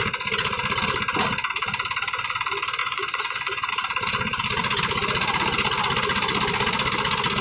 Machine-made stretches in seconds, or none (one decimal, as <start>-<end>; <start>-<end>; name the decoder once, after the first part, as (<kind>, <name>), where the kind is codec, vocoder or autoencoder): 2.8-3.7 (vocoder, Vocos)